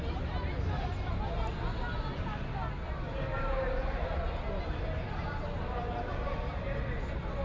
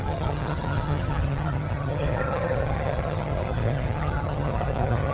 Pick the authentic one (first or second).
first